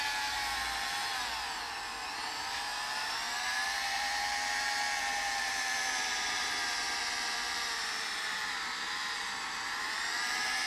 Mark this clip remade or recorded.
remade